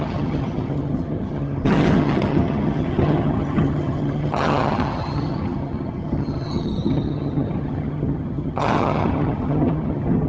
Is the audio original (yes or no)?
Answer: no